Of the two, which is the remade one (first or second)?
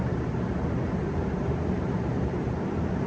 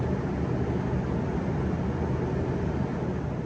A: first